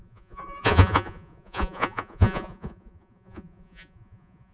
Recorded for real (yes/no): no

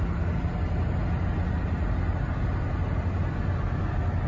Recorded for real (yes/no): yes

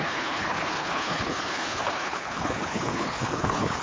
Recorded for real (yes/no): no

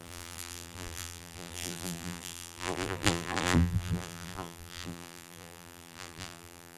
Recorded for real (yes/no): no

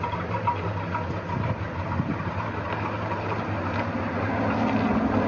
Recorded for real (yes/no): yes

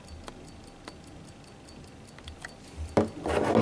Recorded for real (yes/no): yes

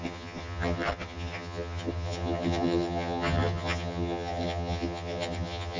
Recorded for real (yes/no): no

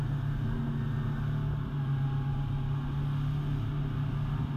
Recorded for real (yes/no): yes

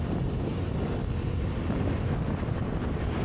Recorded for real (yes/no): yes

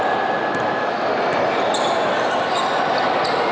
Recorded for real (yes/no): yes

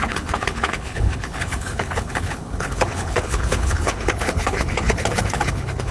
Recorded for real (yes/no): no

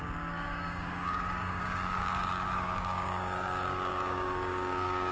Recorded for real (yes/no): no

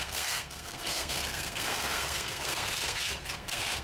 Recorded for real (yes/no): no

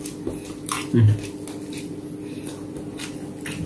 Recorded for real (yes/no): yes